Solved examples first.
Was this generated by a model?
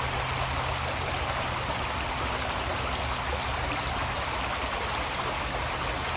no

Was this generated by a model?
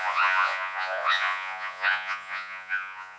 yes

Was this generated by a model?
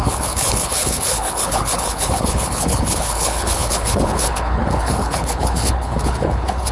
yes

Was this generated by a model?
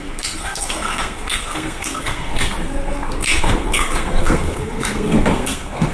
yes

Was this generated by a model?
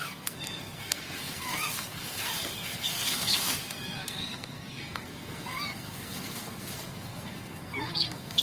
yes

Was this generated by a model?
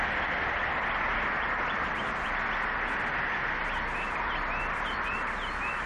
no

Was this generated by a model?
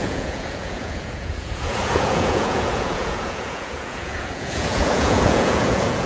yes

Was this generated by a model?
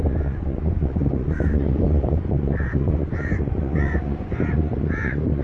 yes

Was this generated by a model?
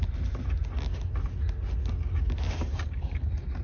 no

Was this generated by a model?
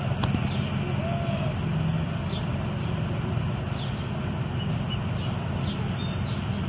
no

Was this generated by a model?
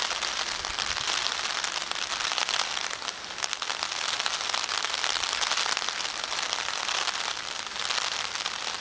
no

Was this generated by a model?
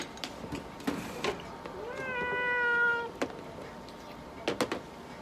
no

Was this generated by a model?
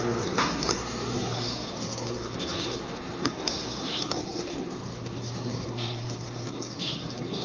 yes